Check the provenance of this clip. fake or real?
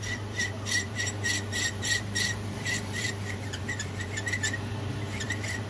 fake